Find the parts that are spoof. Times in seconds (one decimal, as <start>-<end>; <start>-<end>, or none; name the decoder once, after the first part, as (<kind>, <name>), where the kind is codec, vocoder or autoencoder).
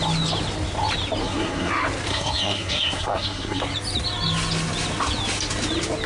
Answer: 1.2-1.7 (codec, SNAC); 2.1-3.6